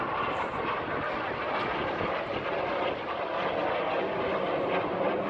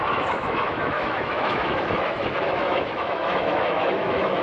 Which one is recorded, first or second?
first